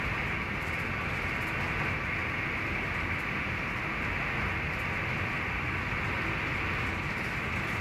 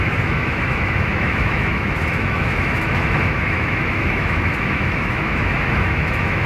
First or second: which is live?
first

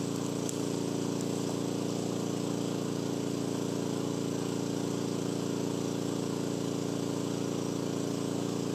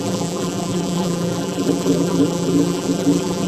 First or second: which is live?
first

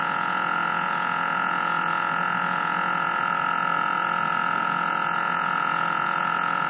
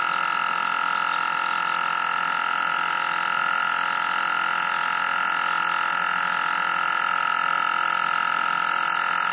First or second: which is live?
second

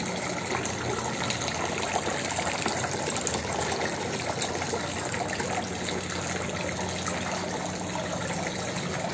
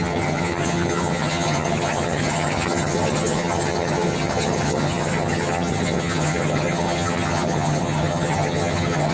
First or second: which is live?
first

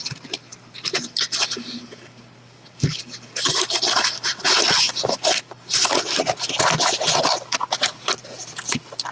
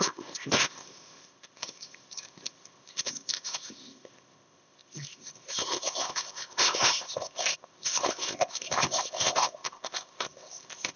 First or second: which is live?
first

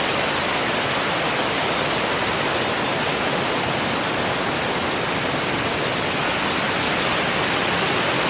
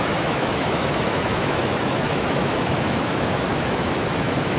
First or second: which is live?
first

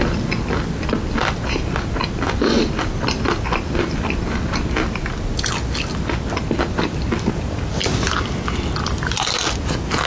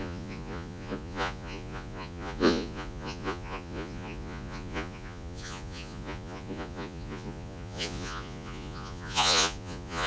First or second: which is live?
first